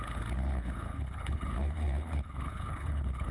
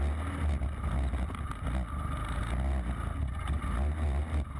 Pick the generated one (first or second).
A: first